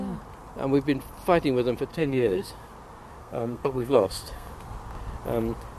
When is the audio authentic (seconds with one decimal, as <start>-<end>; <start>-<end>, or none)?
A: 0.0-1.9; 2.5-3.2; 4.5-5.8